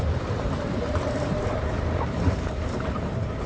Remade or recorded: remade